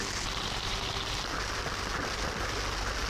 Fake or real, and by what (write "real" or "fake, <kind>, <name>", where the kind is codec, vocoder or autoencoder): real